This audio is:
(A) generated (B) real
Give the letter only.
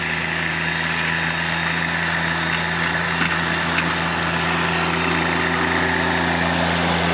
B